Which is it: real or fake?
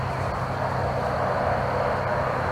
real